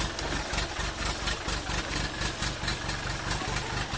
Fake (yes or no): no